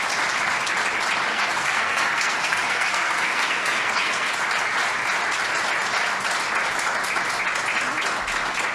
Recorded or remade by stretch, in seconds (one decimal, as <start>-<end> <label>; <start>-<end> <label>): 0.0-1.3 recorded; 1.3-4.3 remade; 4.3-8.7 recorded